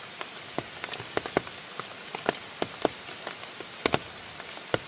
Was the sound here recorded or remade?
recorded